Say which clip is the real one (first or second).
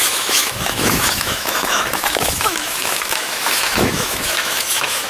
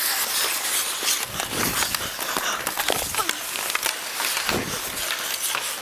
second